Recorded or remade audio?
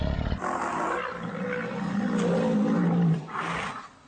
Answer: recorded